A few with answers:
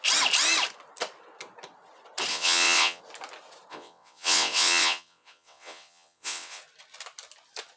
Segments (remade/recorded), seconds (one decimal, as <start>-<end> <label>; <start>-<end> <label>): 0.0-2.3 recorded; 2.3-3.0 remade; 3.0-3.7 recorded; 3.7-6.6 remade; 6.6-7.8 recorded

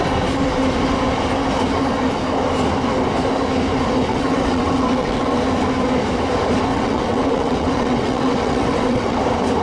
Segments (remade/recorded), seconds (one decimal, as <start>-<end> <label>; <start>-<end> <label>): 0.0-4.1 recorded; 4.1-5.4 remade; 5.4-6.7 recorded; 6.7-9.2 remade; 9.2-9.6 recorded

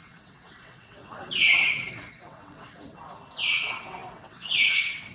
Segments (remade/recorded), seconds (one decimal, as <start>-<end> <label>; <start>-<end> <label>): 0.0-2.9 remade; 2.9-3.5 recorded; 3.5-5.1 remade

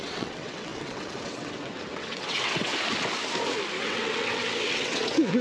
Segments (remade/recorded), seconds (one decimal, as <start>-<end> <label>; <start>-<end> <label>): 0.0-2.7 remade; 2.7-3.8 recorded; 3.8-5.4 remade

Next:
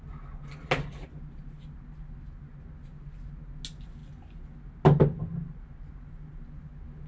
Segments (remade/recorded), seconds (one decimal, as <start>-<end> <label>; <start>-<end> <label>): 0.0-7.1 recorded

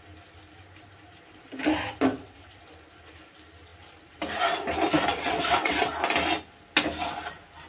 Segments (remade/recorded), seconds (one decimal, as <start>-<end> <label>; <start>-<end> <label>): 0.0-2.1 recorded; 2.1-2.6 remade; 2.6-5.1 recorded; 5.1-5.9 remade; 5.9-7.7 recorded

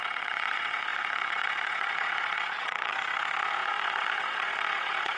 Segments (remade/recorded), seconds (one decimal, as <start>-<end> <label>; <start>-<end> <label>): 0.0-5.2 remade